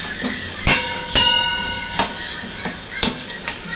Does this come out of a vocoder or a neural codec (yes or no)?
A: yes